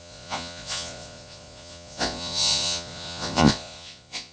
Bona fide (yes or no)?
no